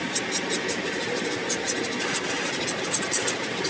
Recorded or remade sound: recorded